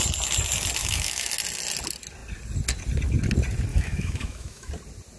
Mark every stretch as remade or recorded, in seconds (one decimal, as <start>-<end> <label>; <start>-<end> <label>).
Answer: 0.0-0.8 recorded; 0.8-1.3 remade; 1.3-3.7 recorded; 3.7-4.7 remade; 4.7-5.2 recorded